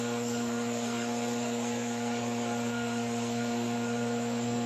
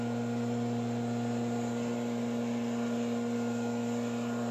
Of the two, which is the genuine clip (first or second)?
second